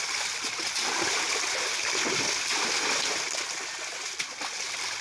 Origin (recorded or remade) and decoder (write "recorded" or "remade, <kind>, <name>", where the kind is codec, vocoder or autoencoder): recorded